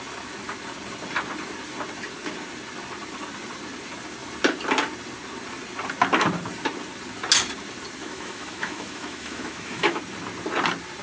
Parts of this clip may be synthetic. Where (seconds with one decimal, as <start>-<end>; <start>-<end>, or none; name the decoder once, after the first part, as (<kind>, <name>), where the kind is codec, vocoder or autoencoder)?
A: 8.0-10.0 (autoencoder, DAC-VAE)